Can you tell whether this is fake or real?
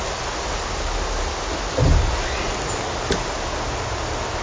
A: real